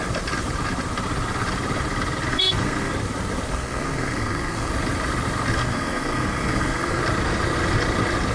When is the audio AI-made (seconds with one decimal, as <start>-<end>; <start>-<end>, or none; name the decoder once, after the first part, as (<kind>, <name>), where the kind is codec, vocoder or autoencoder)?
2.3-2.9 (codec, SNAC); 3.5-4.7; 5.6-7.0